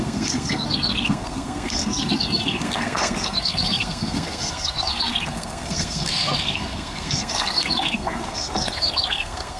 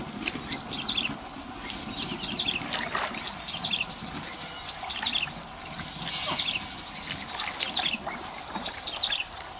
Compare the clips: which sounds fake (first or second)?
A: first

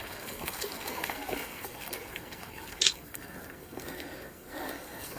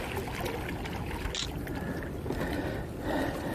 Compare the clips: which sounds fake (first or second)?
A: first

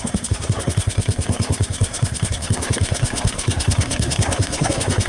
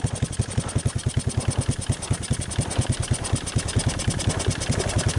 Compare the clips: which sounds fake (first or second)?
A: first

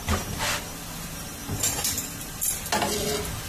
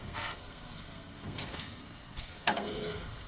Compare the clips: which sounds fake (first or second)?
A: second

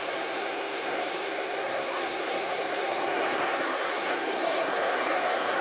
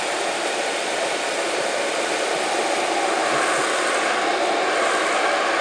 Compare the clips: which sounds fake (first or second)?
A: first